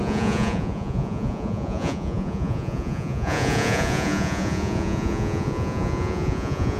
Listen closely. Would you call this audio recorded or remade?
remade